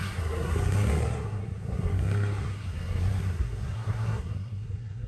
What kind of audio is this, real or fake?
fake